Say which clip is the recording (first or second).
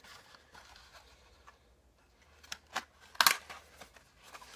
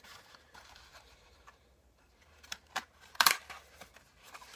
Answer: first